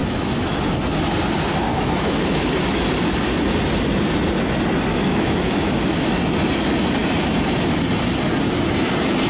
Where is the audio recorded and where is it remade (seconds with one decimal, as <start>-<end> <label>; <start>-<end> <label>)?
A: 0.0-0.6 remade; 0.6-1.7 recorded; 1.7-2.8 remade; 2.8-4.9 recorded; 4.9-6.1 remade; 6.1-9.3 recorded